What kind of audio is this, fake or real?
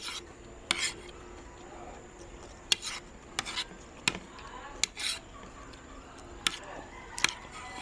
real